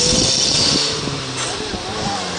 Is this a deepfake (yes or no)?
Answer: no